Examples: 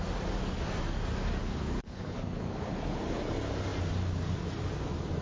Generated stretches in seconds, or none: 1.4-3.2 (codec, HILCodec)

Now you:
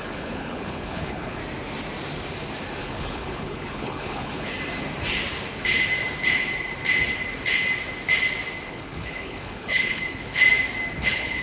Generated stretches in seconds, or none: 0.0-1.4 (codec, HILCodec); 2.8-4.5; 8.7-10.4; 11.0-11.4

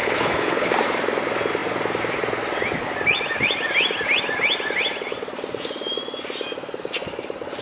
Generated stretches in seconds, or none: 0.0-0.7 (codec, HILCodec)